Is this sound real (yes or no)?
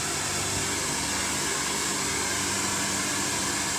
yes